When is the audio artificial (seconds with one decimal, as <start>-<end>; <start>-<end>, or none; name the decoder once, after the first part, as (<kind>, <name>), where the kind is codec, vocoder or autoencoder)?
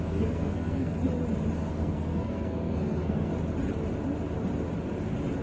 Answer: 0.0-1.0 (codec, SNAC); 1.7-3.3